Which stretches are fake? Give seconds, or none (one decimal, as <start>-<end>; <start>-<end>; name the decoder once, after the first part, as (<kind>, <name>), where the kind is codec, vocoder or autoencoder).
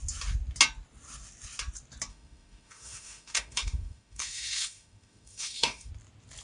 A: 2.1-5.9 (autoencoder, DAC-VAE)